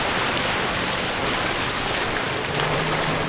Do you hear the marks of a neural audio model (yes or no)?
no